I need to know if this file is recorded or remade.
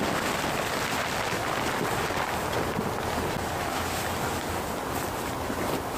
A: recorded